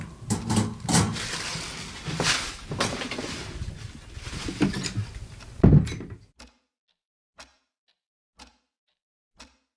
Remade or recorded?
recorded